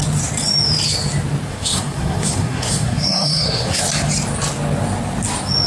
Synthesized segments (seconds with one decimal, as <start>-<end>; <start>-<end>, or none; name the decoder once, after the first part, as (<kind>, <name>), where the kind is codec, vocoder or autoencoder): 1.5-3.8 (codec, SNAC)